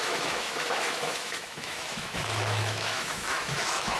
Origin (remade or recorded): remade